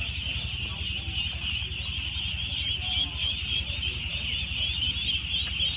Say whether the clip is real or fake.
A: real